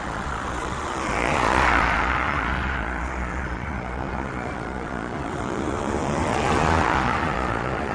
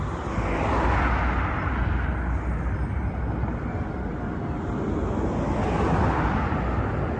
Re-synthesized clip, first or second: first